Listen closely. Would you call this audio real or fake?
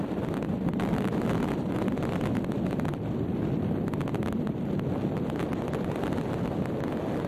real